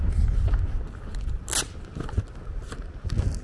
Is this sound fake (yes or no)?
no